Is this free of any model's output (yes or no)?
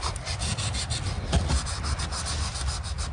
yes